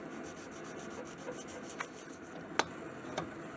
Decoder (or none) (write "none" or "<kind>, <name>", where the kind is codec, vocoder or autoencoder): none